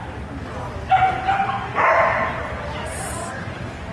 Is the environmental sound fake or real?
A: real